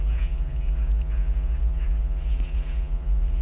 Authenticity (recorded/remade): remade